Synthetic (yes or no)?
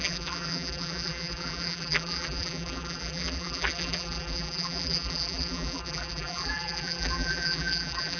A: yes